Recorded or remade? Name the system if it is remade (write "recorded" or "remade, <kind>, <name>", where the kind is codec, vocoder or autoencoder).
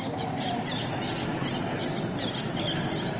recorded